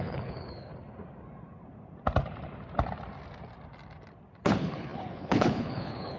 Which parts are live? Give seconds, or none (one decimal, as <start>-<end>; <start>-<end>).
0.7-4.4